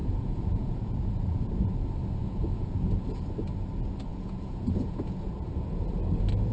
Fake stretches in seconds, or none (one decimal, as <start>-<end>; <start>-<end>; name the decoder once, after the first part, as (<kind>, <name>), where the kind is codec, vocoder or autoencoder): 0.0-1.5 (vocoder, Vocos); 2.2-3.2; 4.1-5.5